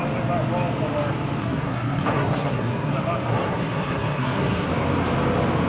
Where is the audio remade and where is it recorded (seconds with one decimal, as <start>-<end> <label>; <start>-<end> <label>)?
0.0-1.4 recorded; 1.4-2.9 remade; 2.9-3.3 recorded; 3.3-4.7 remade; 4.7-5.7 recorded